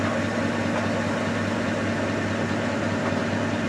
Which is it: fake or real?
real